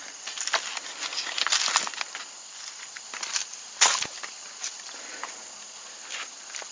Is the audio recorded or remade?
recorded